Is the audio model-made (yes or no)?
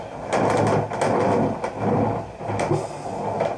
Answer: no